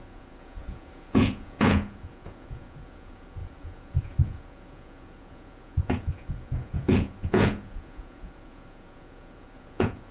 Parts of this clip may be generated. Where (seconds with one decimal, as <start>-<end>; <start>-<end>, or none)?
0.0-10.1